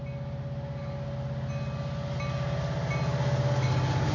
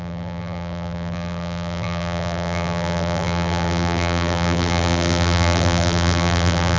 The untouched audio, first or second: first